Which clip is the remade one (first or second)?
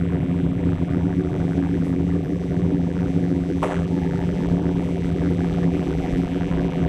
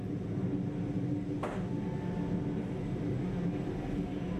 first